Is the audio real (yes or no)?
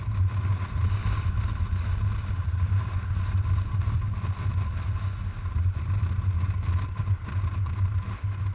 yes